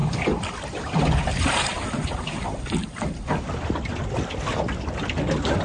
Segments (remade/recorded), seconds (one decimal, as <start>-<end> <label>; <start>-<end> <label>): 0.0-3.4 remade; 3.4-5.6 recorded